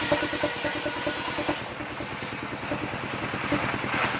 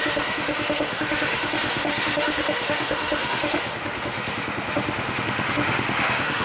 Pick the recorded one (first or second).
first